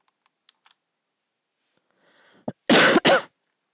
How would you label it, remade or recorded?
recorded